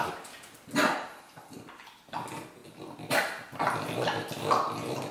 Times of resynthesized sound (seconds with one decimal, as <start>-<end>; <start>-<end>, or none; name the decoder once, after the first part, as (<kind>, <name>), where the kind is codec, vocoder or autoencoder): none